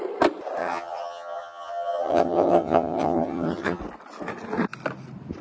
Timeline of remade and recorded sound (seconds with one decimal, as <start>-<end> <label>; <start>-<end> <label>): 0.0-0.6 recorded; 0.6-3.8 remade; 3.8-5.4 recorded